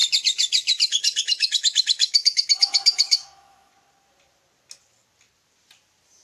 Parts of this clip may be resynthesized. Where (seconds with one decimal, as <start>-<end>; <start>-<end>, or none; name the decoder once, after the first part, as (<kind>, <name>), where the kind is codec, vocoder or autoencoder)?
0.0-3.7 (autoencoder, DAC-VAE)